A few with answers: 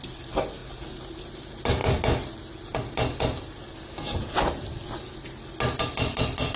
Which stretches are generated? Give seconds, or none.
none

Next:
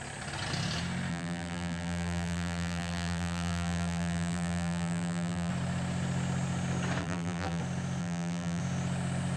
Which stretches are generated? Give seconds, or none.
1.1-5.5; 7.0-7.6; 8.0-8.6